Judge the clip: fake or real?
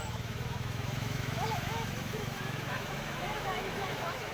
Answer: fake